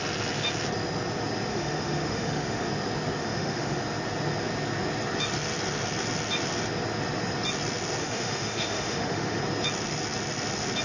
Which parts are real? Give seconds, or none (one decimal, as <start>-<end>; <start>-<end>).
0.0-1.5; 2.7-3.2; 3.8-8.0; 9.4-10.8